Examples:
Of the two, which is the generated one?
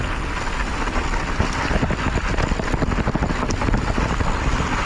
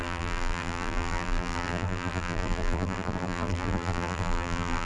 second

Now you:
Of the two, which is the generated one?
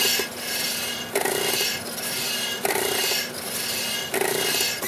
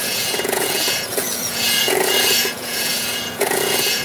second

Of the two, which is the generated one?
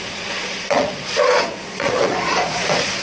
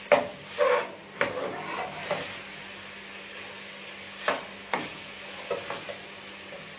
first